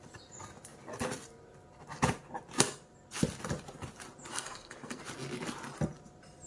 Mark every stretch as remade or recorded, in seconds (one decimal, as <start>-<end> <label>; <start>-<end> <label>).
0.0-4.3 recorded; 4.3-5.0 remade; 5.0-6.5 recorded